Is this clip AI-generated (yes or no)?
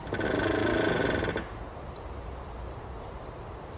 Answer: no